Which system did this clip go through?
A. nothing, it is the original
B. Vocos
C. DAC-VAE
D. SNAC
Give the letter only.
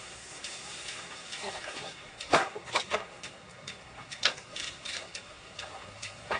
D